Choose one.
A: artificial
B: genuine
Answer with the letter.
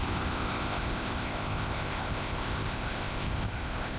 A